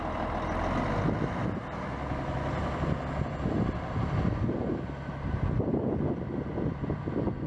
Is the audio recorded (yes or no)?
yes